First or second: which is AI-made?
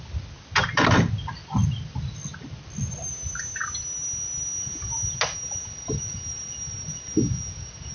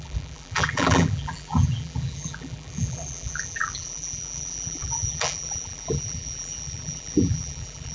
second